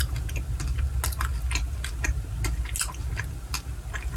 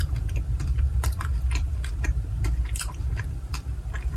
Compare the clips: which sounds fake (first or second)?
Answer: second